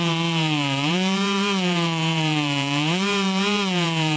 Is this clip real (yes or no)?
no